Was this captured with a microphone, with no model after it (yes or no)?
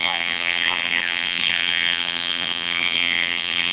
no